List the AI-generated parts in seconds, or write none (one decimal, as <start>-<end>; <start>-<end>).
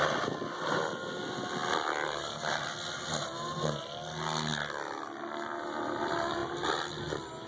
none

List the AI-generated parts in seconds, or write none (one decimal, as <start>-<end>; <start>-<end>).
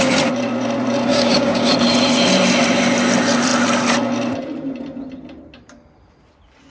1.1-1.7